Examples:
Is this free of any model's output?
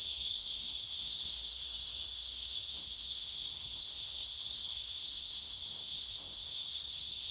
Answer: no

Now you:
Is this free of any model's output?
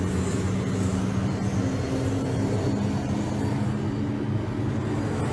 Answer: yes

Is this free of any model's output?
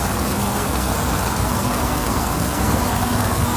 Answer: no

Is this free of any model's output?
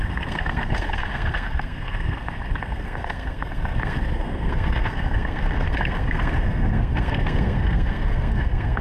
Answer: no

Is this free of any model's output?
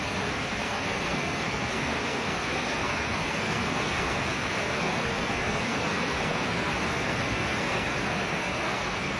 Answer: no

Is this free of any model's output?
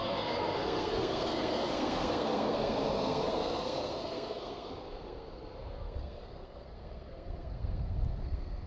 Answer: no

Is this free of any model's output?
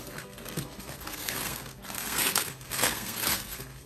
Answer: no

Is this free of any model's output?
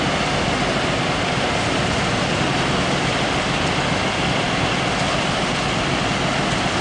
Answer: yes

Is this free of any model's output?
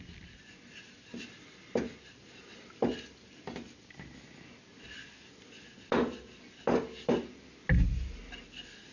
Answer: yes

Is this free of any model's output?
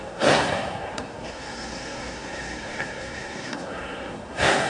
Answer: no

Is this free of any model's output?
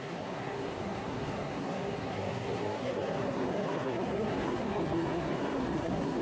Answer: no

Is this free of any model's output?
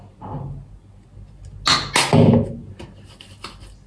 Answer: yes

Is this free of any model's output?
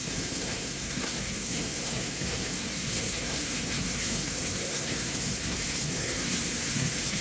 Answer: no